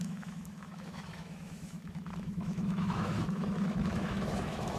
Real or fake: fake